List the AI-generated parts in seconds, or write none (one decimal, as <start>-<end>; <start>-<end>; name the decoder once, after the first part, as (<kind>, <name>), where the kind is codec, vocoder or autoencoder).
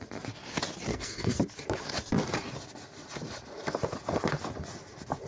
0.9-1.4 (codec, SNAC)